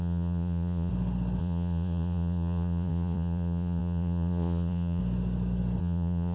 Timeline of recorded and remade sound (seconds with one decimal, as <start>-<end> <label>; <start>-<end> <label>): 0.0-0.9 remade; 0.9-1.4 recorded; 1.4-5.0 remade; 5.0-5.8 recorded; 5.8-6.3 remade